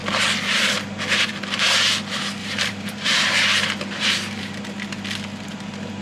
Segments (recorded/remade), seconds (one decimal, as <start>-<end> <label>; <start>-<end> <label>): 0.0-2.4 recorded; 2.4-4.4 remade; 4.4-6.0 recorded